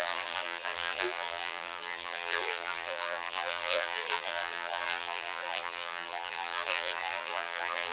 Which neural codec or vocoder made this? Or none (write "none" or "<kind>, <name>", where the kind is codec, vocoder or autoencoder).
vocoder, BigVGAN v2